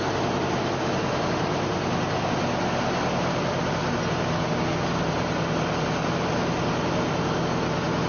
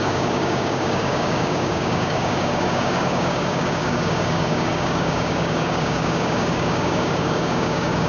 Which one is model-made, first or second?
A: second